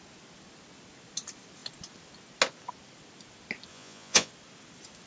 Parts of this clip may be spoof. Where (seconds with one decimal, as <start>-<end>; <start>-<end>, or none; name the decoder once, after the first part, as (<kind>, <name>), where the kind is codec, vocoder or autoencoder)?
3.7-4.3 (vocoder, Vocos)